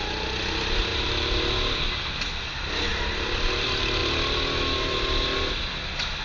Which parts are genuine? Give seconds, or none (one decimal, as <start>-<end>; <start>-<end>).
0.0-6.2